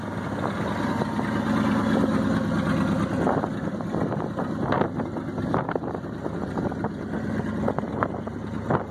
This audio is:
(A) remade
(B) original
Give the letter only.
B